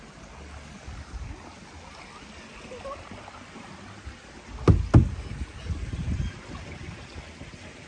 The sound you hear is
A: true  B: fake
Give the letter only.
A